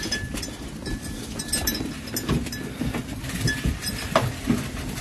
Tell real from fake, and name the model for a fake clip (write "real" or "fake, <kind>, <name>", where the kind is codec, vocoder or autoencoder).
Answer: real